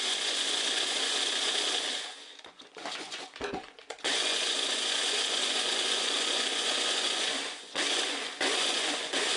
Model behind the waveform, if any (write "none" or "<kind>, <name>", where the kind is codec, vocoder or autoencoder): vocoder, Vocos